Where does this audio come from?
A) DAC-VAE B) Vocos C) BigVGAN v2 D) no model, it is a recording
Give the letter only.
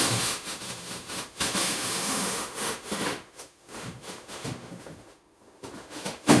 A